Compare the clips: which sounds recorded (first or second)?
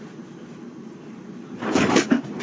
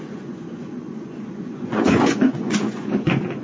first